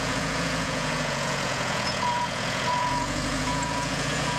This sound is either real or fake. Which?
fake